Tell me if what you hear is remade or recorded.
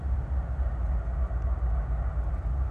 recorded